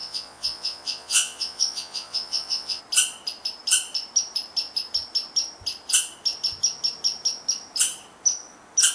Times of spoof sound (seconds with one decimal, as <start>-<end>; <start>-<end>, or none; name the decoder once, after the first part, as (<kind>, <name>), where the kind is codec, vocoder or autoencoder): 0.0-2.8 (vocoder, Vocos)